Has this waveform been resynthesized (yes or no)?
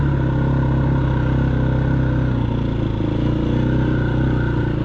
no